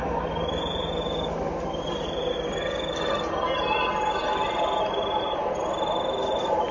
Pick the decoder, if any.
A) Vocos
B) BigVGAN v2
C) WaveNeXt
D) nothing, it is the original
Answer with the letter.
D